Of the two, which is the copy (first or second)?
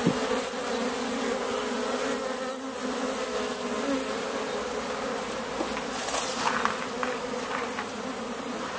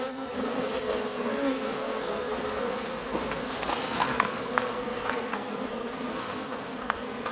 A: second